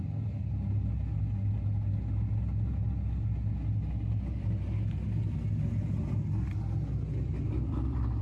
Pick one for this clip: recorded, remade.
recorded